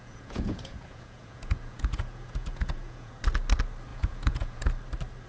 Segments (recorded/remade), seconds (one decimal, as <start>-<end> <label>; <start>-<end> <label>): 0.0-3.2 remade; 3.2-3.9 recorded; 3.9-4.7 remade; 4.7-5.3 recorded